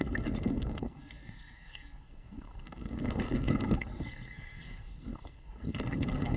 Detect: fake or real fake